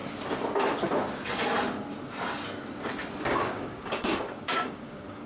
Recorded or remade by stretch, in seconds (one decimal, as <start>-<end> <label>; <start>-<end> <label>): 0.0-3.2 recorded; 3.2-5.3 remade